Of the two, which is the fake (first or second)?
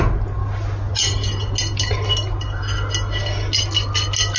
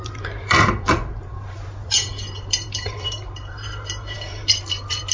second